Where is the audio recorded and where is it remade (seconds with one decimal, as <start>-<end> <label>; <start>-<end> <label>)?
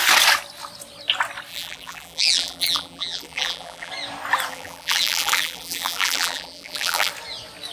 0.0-1.5 recorded; 1.5-3.9 remade; 3.9-4.5 recorded; 4.5-7.1 remade; 7.1-7.7 recorded